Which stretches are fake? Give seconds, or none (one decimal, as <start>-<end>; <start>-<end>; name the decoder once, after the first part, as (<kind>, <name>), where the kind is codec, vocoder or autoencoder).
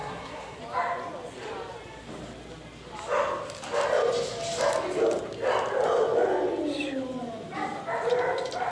0.0-0.6 (codec, SNAC)